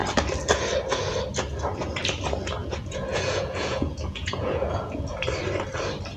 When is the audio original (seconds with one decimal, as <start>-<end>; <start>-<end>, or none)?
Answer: 0.0-2.6; 5.2-6.2